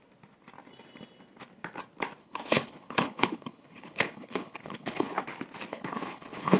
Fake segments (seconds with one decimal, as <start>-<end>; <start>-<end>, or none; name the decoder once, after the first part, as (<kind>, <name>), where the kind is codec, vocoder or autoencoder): 2.2-5.2 (codec, HILCodec); 5.7-6.6